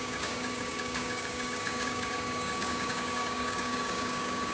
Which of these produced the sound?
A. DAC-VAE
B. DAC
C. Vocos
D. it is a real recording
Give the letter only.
B